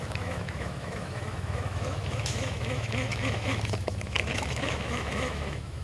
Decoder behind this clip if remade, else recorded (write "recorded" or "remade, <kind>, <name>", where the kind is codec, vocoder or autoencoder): remade, autoencoder, DAC-VAE